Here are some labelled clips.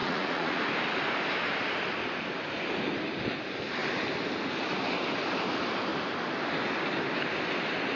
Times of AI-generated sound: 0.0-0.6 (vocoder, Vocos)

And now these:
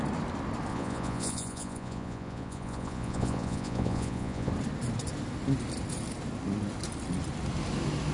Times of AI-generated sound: 0.7-4.5 (vocoder, Vocos)

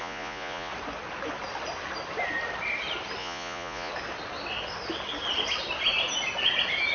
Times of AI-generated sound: 0.0-0.7 (vocoder, Vocos); 3.2-3.9